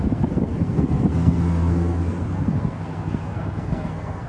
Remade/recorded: remade